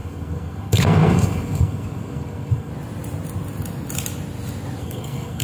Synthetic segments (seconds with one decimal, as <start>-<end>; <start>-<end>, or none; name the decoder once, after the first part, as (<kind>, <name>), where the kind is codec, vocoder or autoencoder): 0.0-2.7 (codec, SNAC); 4.8-5.4